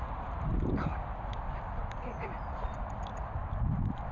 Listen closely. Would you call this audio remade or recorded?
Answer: recorded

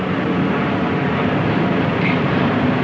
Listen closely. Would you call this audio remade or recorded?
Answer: remade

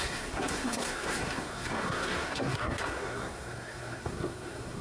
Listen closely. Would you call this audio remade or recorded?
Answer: remade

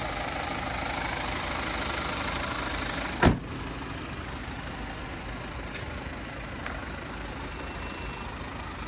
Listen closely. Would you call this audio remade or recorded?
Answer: recorded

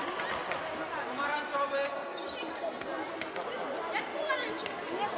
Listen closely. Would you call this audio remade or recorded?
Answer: recorded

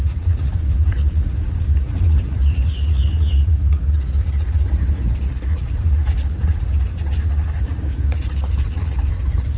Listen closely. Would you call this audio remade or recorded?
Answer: remade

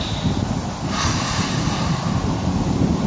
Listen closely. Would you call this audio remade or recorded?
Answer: remade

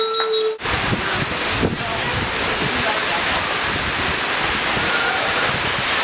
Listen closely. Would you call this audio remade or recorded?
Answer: recorded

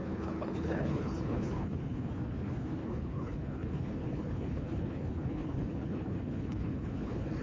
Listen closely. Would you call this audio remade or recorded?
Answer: remade